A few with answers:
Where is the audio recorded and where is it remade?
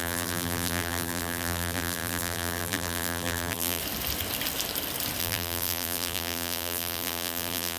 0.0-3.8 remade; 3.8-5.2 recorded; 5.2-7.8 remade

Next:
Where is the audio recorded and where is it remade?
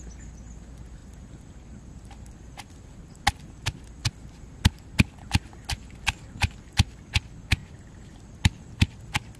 0.0-7.6 recorded; 7.6-9.0 remade; 9.0-9.4 recorded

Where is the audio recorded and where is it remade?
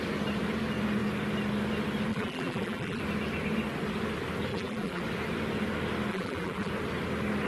0.0-2.1 recorded; 2.1-3.0 remade; 3.0-4.5 recorded; 4.5-5.0 remade; 5.0-6.1 recorded; 6.1-6.7 remade; 6.7-7.5 recorded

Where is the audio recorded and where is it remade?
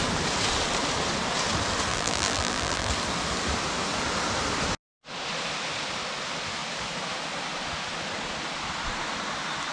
0.0-1.9 recorded; 1.9-2.9 remade; 2.9-9.7 recorded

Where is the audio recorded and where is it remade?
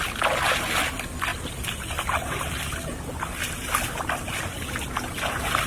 0.0-1.3 recorded; 1.3-4.6 remade; 4.6-5.7 recorded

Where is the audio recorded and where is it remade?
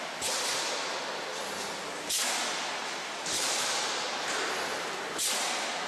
0.0-2.8 recorded; 2.8-4.0 remade; 4.0-5.9 recorded